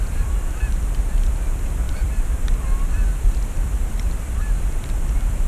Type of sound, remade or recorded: remade